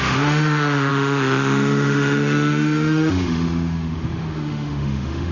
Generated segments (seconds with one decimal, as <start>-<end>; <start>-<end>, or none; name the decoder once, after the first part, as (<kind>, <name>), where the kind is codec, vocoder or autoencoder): 0.0-5.3 (autoencoder, DAC-VAE)